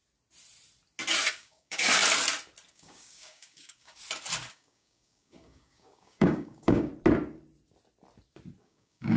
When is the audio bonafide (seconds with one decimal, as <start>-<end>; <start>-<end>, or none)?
0.0-1.3; 2.0-2.7; 4.0-4.5; 6.9-8.6